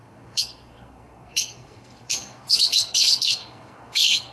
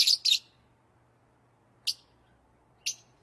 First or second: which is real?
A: second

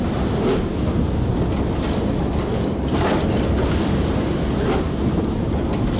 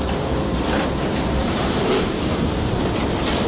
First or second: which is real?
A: first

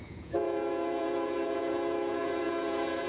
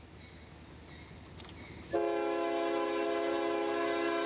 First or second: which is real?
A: second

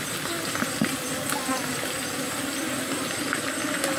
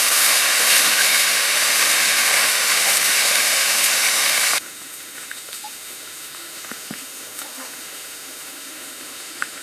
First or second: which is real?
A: first